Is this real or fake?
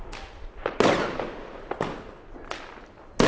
real